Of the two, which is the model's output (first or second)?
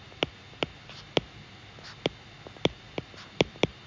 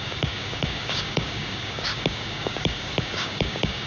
second